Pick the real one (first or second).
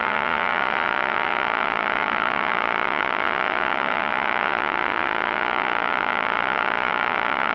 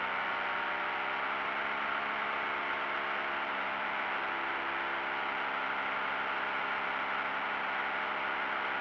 second